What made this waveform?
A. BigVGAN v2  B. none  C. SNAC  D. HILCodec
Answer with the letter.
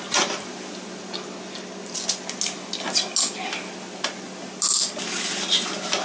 B